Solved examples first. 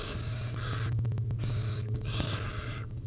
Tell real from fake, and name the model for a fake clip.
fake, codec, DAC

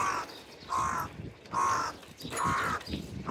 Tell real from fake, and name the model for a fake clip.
real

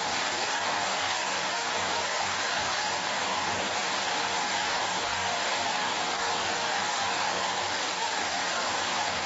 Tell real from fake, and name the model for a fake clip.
fake, codec, DAC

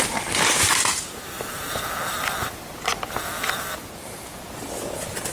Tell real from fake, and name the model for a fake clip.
real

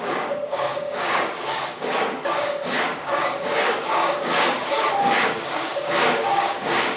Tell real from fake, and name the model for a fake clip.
fake, codec, DAC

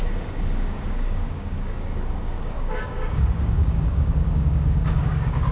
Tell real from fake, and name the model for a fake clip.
fake, codec, DAC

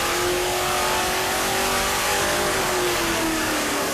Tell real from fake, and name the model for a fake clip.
fake, codec, DAC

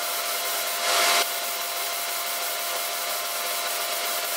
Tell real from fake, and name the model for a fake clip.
real